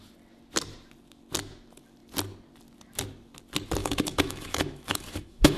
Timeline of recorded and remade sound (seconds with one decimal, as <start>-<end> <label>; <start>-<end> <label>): 0.0-3.8 recorded; 3.8-5.6 remade